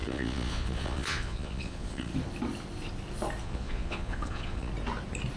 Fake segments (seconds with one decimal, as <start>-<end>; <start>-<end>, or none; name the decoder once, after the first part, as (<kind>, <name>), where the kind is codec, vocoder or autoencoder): 0.0-2.1 (vocoder, Vocos); 3.4-4.7